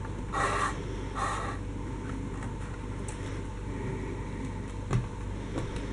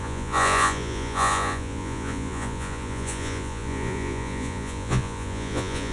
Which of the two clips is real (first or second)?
first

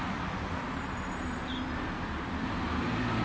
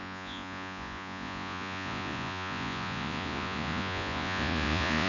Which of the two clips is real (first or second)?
first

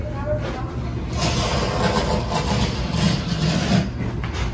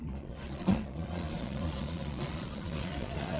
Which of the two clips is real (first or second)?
first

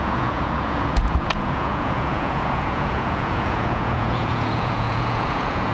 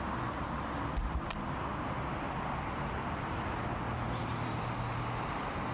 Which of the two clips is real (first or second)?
second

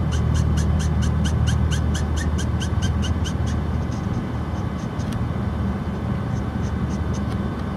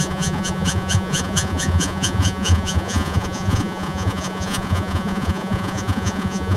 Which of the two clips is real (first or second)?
first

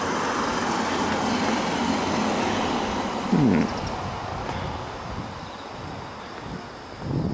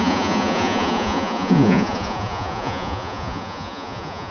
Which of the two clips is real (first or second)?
first